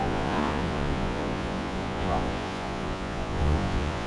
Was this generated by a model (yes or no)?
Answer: yes